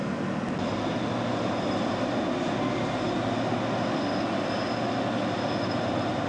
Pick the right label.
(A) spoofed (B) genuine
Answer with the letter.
B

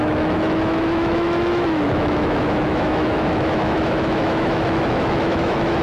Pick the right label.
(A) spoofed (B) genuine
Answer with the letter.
A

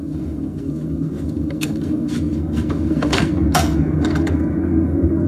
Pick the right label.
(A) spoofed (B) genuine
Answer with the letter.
A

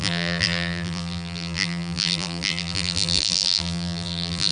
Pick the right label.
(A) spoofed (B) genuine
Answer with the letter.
A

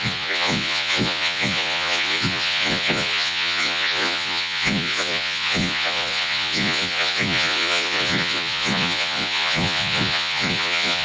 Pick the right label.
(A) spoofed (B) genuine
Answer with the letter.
A